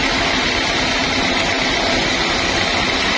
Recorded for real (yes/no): yes